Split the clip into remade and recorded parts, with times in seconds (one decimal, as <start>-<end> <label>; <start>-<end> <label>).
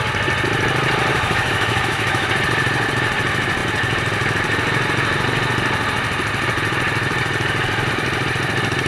0.0-1.1 recorded; 1.1-2.3 remade; 2.3-8.9 recorded